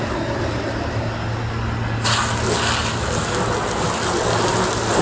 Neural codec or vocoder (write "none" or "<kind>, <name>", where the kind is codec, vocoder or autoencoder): none